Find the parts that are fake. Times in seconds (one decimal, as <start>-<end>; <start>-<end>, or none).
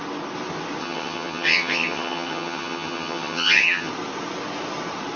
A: 0.8-3.9